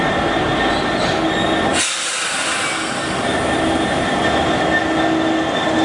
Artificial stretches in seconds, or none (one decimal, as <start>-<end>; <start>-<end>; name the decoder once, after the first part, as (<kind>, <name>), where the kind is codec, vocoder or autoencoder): none